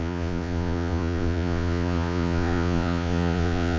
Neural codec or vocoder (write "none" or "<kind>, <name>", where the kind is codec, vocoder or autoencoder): vocoder, Vocos